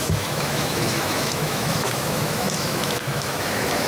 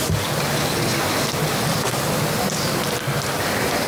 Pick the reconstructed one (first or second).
first